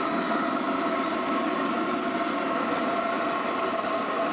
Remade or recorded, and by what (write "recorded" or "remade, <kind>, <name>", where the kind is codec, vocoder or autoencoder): recorded